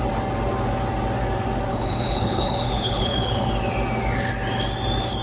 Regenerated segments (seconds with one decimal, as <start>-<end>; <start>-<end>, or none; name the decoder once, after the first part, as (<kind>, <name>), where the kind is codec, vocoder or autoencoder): 1.7-3.5 (codec, HILCodec)